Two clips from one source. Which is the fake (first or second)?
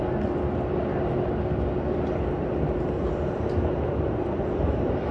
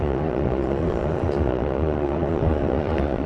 second